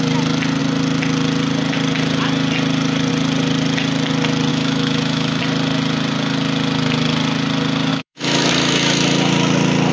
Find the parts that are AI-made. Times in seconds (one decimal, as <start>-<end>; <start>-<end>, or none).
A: 4.5-5.4; 7.9-8.5